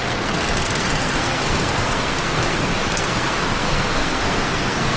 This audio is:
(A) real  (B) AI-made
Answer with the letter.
B